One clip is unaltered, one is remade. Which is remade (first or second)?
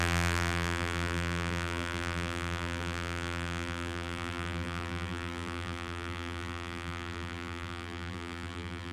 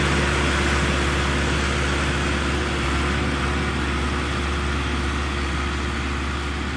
first